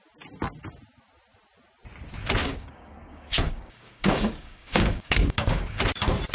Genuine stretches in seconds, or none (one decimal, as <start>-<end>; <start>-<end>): 0.0-2.4; 5.8-6.3